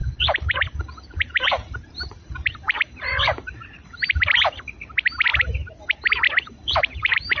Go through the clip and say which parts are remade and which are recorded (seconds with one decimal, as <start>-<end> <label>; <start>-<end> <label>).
0.0-4.2 remade; 4.2-5.3 recorded; 5.3-5.8 remade; 5.8-6.6 recorded; 6.6-7.4 remade